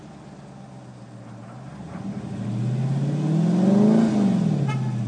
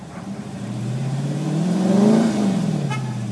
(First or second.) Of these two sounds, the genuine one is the first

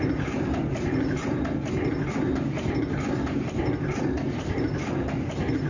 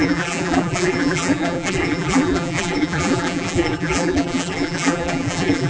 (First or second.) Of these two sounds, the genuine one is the first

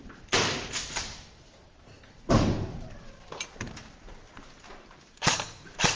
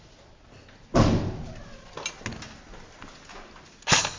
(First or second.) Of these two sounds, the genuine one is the second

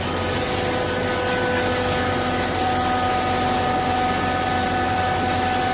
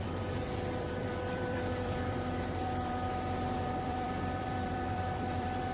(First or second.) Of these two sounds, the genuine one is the first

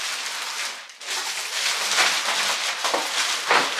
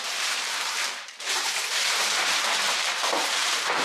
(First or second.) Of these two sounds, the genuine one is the first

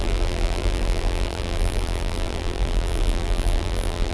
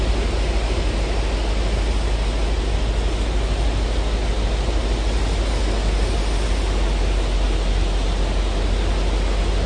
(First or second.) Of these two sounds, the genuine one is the second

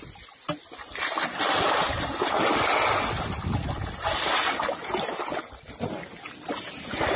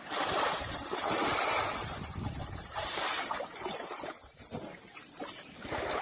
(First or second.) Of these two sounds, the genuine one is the first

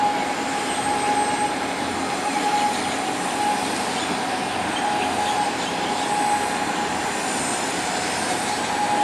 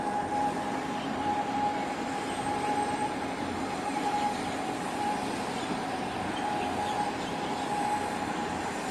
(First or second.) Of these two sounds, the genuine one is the first